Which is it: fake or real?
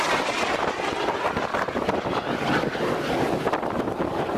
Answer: real